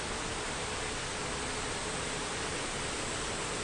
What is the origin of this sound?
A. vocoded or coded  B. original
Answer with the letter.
B